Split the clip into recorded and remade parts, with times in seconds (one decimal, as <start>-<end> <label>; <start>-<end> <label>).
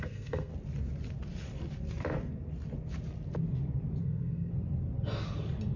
0.0-0.5 remade; 0.5-4.0 recorded; 4.0-4.5 remade; 4.5-5.8 recorded